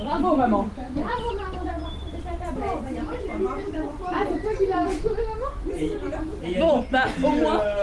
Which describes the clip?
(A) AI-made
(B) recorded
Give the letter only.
B